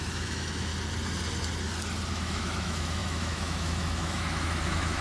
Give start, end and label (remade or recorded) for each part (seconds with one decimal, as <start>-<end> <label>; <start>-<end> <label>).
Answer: 0.0-0.7 remade; 0.7-2.1 recorded; 2.1-5.0 remade